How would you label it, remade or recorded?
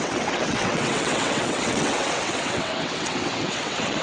remade